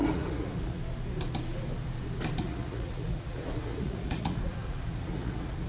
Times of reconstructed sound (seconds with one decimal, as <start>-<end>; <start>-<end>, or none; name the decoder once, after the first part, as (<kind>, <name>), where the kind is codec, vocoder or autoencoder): 0.0-0.8 (vocoder, Vocos); 2.4-5.7